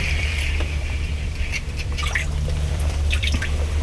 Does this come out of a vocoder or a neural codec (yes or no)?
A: yes